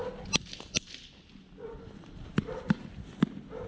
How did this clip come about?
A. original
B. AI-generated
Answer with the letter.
A